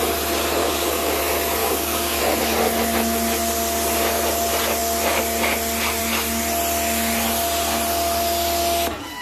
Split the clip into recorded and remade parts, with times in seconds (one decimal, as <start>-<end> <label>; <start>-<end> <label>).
0.0-0.6 recorded; 0.6-1.2 remade; 1.2-1.6 recorded; 1.6-2.2 remade; 2.2-9.2 recorded